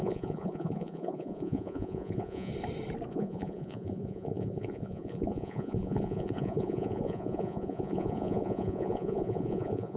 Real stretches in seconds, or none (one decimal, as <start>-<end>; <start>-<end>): 2.5-3.1

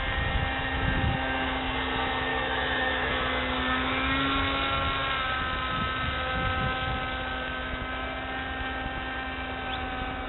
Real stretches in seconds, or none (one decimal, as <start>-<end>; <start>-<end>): 0.0-2.3; 3.1-10.3

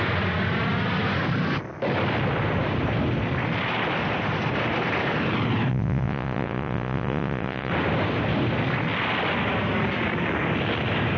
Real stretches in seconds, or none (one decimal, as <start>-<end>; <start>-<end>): 0.0-5.7; 7.7-11.2

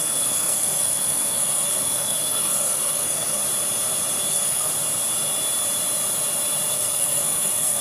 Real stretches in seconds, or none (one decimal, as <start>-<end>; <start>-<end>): 3.4-4.3; 4.7-6.7

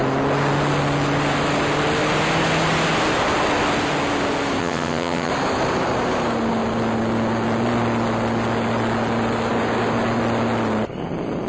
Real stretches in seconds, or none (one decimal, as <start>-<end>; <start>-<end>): 0.0-4.6; 5.3-11.5

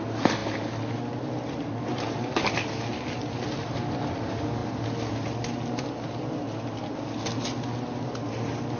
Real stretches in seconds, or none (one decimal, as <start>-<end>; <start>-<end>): 0.0-8.8

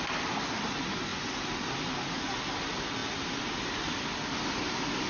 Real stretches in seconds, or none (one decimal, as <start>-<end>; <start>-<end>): 0.0-5.1

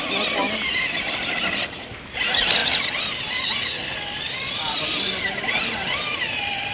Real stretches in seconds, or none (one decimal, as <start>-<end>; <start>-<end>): 0.0-6.7